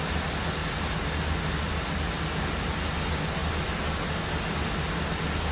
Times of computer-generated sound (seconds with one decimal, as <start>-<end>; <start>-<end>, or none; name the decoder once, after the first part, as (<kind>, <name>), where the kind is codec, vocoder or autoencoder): none